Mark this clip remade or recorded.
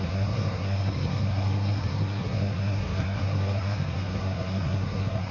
remade